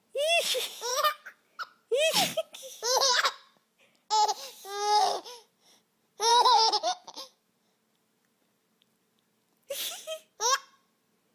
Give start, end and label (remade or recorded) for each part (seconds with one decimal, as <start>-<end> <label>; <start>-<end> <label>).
0.0-0.9 recorded; 0.9-1.6 remade; 1.6-2.7 recorded; 2.7-3.8 remade; 3.8-4.6 recorded; 4.6-5.5 remade; 5.5-6.3 recorded; 6.3-7.5 remade; 7.5-11.3 recorded